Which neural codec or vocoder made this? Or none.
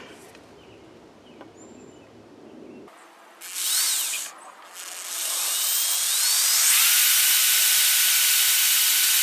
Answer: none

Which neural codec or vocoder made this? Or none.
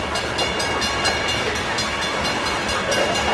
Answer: none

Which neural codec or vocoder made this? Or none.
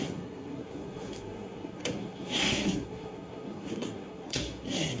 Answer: codec, SNAC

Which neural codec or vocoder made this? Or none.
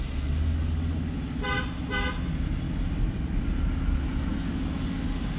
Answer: none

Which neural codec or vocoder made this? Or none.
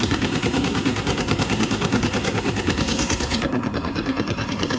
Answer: codec, SNAC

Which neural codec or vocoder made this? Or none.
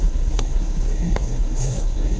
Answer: codec, SNAC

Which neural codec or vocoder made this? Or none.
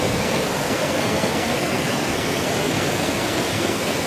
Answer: codec, SNAC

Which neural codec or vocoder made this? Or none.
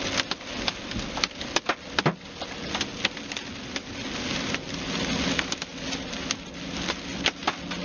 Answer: none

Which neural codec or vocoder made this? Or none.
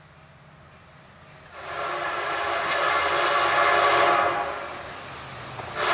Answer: none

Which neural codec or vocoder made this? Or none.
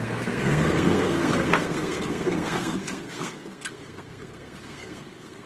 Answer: codec, SNAC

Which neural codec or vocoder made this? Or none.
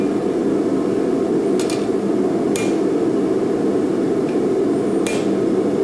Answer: none